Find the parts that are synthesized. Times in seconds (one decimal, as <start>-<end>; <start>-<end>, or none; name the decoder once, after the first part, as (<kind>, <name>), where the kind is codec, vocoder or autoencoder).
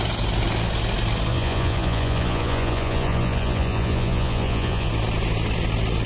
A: 1.3-4.9 (vocoder, Vocos)